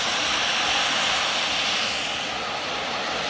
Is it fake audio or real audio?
real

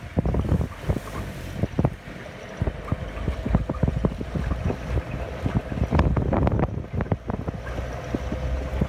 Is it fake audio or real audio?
real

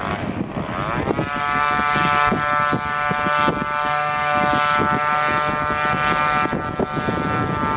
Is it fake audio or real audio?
real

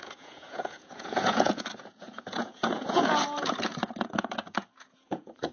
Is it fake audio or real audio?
fake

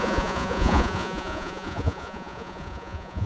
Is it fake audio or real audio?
fake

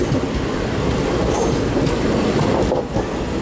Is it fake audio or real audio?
real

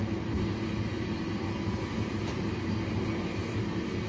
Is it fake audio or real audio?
real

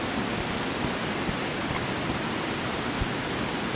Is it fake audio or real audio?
real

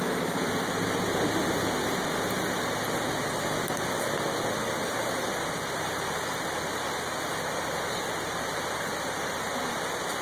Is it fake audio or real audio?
real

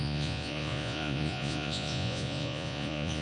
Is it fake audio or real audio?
fake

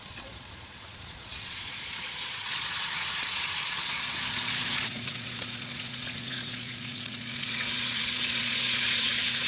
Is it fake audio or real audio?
fake